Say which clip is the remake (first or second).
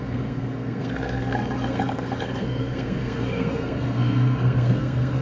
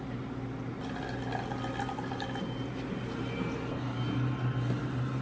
first